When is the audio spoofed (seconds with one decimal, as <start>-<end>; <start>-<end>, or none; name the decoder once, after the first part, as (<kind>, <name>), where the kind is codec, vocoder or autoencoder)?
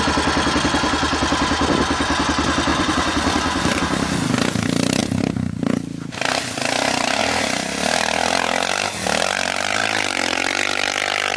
2.7-3.8 (vocoder, Vocos)